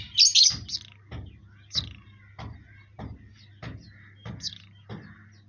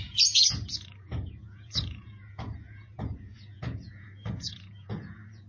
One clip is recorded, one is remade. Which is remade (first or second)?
second